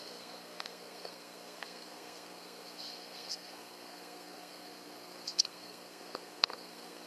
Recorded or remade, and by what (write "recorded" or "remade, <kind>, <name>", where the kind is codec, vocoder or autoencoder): remade, codec, SNAC